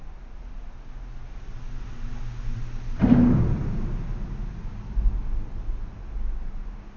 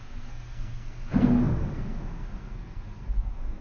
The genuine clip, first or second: first